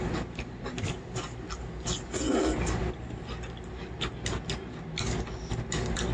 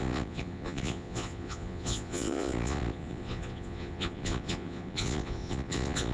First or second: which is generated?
second